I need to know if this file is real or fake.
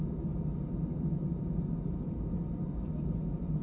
real